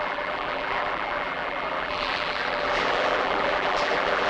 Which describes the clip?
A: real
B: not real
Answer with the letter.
B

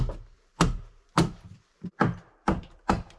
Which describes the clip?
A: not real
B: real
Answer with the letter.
B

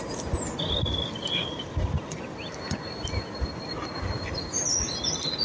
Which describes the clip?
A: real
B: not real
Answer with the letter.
A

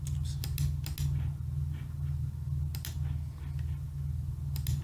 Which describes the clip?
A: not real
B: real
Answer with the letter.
B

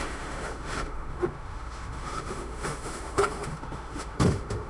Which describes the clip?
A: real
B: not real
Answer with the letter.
B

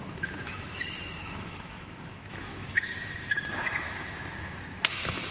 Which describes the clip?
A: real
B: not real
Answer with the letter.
B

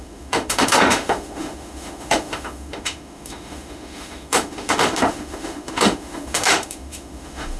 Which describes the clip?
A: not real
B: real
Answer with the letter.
A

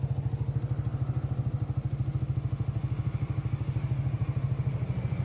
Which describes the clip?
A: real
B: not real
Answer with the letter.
A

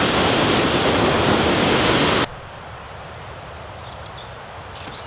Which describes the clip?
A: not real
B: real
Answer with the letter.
B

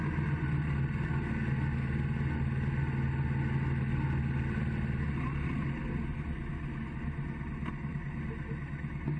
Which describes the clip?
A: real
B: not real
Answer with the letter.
A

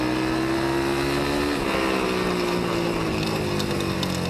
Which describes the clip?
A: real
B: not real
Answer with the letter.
A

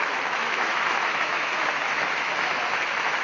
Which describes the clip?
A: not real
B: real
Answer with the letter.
A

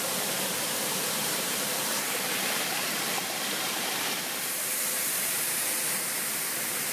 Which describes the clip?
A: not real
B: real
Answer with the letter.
A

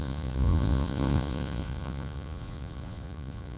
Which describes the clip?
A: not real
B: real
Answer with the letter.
A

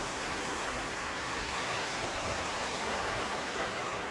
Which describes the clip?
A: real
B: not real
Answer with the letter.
B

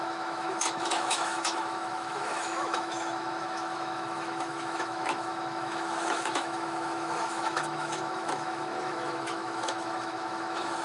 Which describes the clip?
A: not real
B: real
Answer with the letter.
A